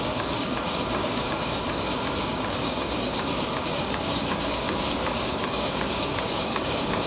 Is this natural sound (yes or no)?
no